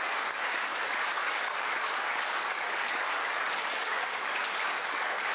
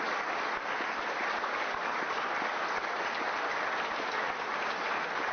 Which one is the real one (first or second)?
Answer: second